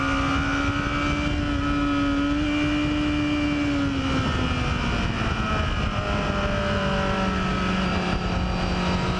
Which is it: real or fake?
real